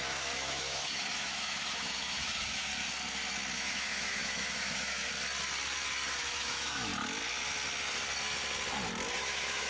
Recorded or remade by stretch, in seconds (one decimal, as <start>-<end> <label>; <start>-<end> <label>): 0.0-2.7 remade; 2.7-3.5 recorded; 3.5-5.1 remade; 5.1-6.2 recorded; 6.2-6.9 remade; 6.9-9.1 recorded; 9.1-9.7 remade